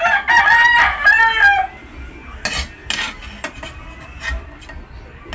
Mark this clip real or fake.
real